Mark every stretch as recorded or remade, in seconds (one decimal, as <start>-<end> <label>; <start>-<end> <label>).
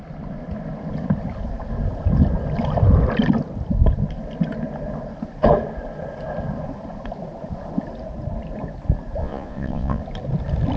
0.0-9.2 recorded; 9.2-10.0 remade; 10.0-10.8 recorded